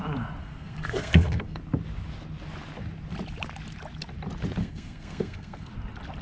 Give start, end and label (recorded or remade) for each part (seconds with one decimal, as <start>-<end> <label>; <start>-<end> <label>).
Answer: 0.0-0.4 recorded; 0.4-1.6 remade; 1.6-4.6 recorded; 4.6-5.7 remade; 5.7-6.2 recorded